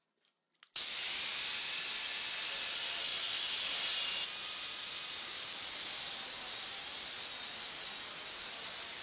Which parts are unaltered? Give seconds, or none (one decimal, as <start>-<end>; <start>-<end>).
0.0-9.0